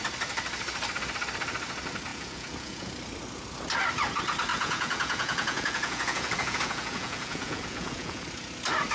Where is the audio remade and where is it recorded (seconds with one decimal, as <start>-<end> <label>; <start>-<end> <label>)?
0.0-2.1 recorded; 2.1-2.9 remade; 2.9-4.5 recorded; 4.5-8.2 remade; 8.2-8.9 recorded